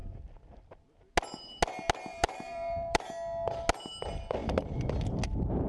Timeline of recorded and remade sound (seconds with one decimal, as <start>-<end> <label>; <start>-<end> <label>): 0.0-2.1 recorded; 2.1-3.1 remade; 3.1-5.7 recorded